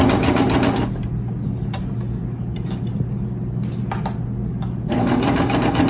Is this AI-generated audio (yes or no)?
no